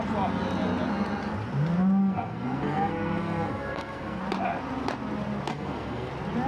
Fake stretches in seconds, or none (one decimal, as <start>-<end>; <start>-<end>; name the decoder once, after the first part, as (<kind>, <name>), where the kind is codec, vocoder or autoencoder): 2.0-4.2 (codec, SNAC); 5.5-6.1